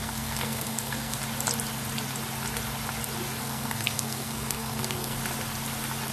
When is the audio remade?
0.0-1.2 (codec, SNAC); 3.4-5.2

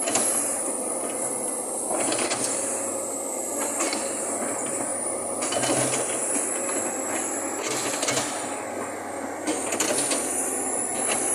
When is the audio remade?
none

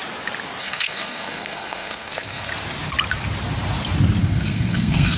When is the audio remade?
0.6-2.5 (codec, SNAC); 4.2-5.2